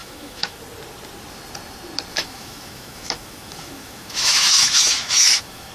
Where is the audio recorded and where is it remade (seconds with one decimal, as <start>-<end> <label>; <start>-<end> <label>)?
0.0-0.6 remade; 0.6-2.1 recorded; 2.1-5.7 remade